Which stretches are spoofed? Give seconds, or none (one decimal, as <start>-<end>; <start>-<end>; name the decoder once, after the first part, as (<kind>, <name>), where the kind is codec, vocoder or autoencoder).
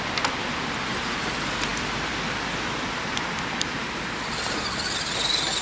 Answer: none